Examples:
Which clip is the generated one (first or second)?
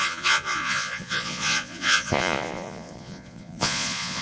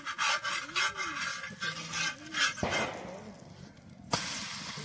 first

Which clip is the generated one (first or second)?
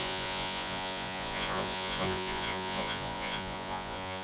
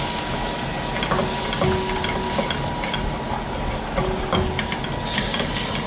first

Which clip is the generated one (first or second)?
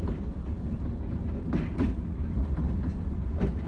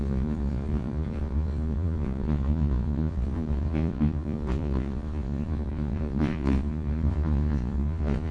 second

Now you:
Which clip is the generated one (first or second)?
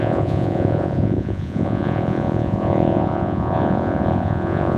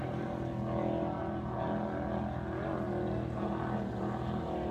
first